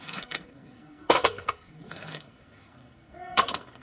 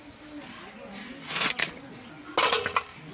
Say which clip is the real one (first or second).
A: second